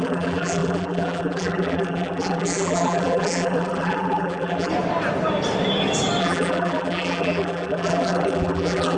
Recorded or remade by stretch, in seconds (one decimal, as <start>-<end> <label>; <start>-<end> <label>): 0.0-4.7 remade; 4.7-6.2 recorded; 6.2-9.0 remade